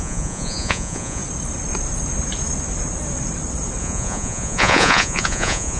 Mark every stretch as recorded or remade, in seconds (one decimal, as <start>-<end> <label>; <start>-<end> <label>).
0.0-1.2 remade; 1.2-3.8 recorded; 3.8-5.8 remade